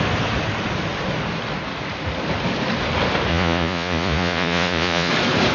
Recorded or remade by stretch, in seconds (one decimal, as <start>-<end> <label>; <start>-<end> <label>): 0.0-3.3 recorded; 3.3-5.1 remade; 5.1-5.5 recorded

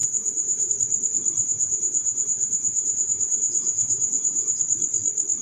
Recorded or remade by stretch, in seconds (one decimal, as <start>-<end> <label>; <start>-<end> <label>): 0.0-0.7 remade; 0.7-1.4 recorded; 1.4-4.6 remade; 4.6-5.4 recorded

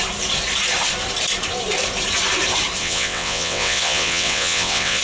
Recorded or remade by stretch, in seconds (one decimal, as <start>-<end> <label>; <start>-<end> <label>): 0.0-2.8 recorded; 2.8-5.0 remade

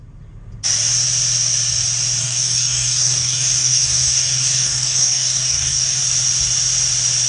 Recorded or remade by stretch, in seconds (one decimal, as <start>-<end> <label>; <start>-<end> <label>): 0.0-2.2 recorded; 2.2-6.0 remade; 6.0-7.3 recorded

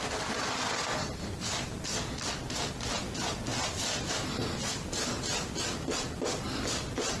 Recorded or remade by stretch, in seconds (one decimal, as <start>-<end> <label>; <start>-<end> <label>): 0.0-7.2 recorded

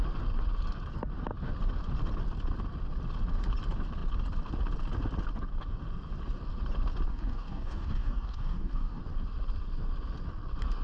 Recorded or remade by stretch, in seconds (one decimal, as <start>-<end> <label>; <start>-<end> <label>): 0.0-7.1 recorded; 7.1-9.0 remade; 9.0-10.8 recorded